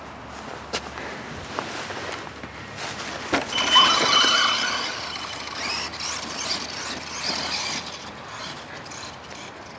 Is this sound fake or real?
real